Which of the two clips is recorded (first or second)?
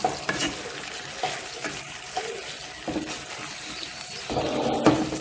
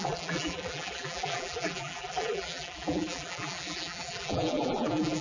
first